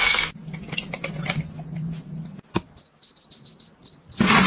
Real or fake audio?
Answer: real